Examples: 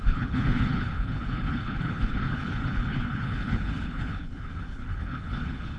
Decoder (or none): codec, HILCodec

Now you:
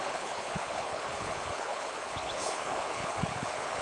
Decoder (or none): codec, HILCodec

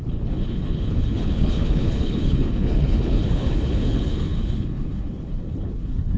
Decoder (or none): codec, HILCodec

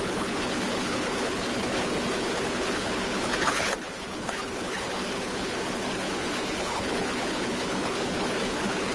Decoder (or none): codec, HILCodec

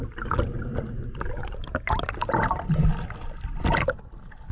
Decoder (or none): none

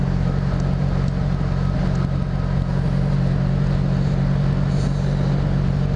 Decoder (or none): none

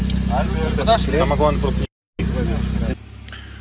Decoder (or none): none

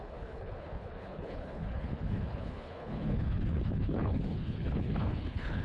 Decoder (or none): codec, HILCodec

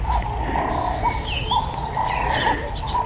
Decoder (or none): none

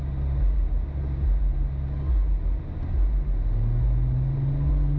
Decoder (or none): none